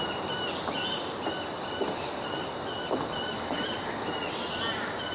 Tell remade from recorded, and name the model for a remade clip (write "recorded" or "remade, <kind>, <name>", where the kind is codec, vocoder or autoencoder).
recorded